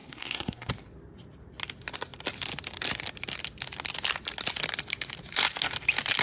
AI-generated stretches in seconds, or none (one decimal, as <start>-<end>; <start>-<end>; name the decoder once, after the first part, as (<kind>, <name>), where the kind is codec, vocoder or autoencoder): 0.0-0.7 (codec, SNAC)